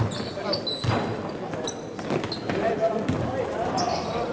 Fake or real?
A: real